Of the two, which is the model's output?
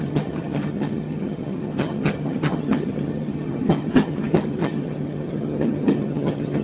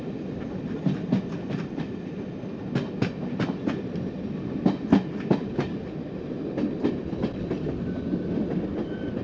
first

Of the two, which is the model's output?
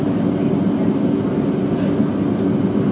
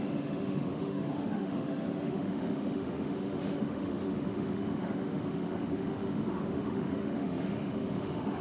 second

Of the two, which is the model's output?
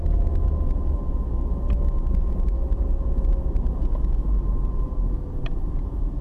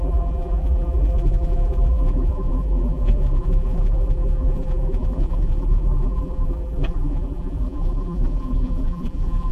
second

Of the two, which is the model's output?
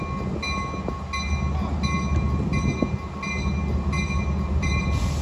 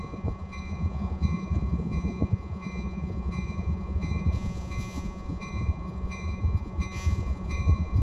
second